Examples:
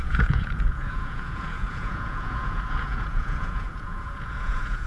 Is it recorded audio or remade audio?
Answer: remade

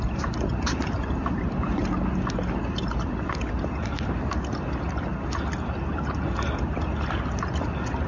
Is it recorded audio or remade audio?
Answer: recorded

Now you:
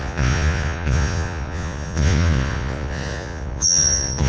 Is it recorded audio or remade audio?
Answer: remade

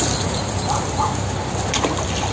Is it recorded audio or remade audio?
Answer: recorded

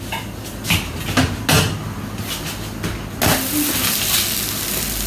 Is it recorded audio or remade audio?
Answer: recorded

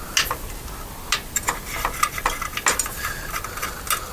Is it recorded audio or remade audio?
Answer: recorded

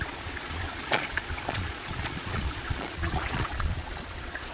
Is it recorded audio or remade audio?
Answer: remade